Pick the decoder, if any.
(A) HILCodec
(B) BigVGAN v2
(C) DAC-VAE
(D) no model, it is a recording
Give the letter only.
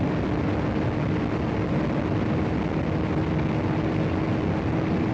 D